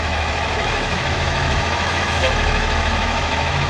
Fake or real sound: fake